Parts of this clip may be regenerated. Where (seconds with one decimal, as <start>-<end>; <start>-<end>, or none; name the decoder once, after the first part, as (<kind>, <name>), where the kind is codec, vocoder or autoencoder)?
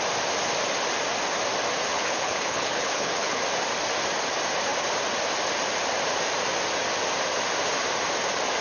1.9-3.4 (codec, HILCodec)